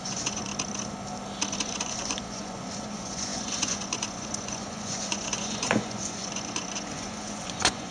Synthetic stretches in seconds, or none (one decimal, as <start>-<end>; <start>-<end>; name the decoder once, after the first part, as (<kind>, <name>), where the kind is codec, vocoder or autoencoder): 0.0-0.5 (vocoder, Vocos); 1.6-7.9